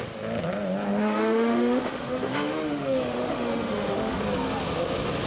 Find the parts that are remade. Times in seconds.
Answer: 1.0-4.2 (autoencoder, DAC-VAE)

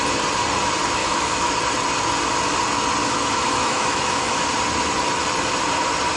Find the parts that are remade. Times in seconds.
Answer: 1.0-1.5 (autoencoder, DAC-VAE); 3.0-4.4

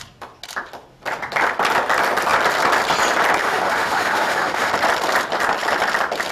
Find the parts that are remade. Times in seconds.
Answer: 3.4-4.7 (autoencoder, DAC-VAE)

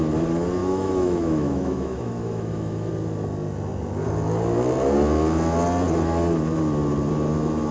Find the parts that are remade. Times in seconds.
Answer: 0.6-2.9 (autoencoder, DAC-VAE)

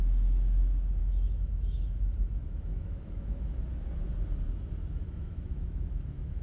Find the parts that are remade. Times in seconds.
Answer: 1.0-3.5 (autoencoder, DAC-VAE); 5.0-6.4